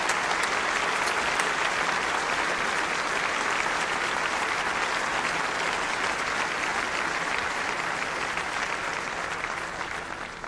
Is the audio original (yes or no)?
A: yes